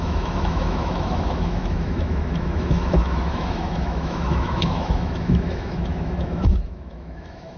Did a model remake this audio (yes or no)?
yes